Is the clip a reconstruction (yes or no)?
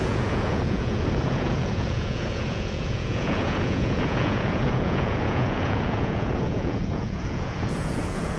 yes